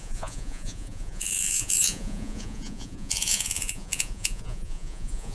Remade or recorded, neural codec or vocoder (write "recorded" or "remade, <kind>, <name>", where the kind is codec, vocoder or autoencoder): remade, vocoder, Vocos